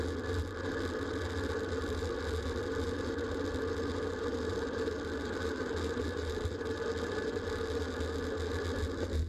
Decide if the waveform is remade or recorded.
recorded